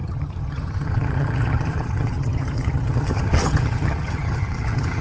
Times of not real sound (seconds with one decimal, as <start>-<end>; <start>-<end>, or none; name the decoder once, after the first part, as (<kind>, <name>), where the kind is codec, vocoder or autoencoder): 0.0-5.0 (vocoder, HiFi-GAN)